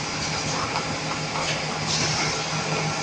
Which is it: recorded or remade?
recorded